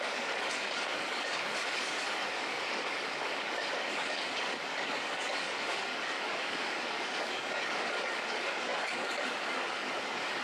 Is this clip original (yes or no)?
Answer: no